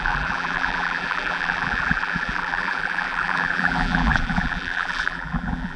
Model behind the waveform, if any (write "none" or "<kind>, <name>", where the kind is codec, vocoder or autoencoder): vocoder, BigVGAN v2